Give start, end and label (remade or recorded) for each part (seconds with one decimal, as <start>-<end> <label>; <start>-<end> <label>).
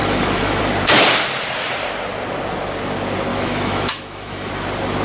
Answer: 0.0-0.6 remade; 0.6-3.3 recorded; 3.3-4.5 remade; 4.5-5.0 recorded